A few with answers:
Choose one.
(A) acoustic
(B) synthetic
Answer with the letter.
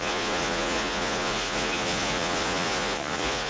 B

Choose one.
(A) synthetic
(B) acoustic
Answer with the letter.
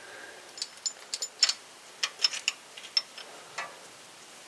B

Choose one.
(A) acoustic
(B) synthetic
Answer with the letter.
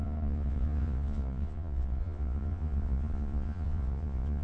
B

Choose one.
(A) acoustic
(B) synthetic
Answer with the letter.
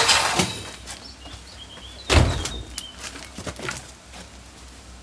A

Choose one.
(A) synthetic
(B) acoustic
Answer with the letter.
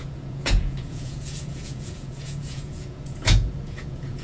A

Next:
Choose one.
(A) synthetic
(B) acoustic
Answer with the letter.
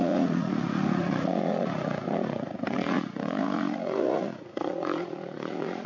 A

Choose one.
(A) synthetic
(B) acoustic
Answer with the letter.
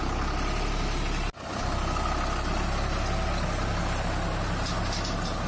B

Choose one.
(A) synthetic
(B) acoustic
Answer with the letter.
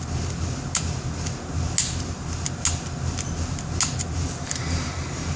B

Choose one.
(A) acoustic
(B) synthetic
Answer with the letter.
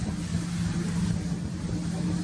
A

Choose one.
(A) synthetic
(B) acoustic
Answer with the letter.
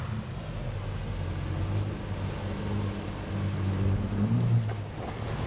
B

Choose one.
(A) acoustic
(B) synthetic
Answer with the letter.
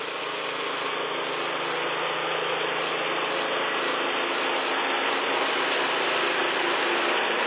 A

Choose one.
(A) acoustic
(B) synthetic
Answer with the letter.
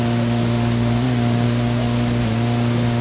A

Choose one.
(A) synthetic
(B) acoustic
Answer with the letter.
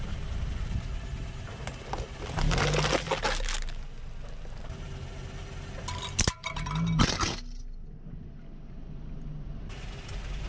B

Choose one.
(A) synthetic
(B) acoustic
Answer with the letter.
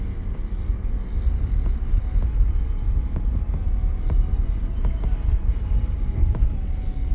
B